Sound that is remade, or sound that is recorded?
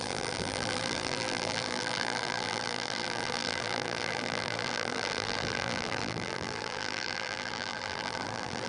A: remade